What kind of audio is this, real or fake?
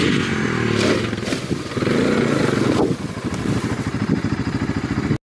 real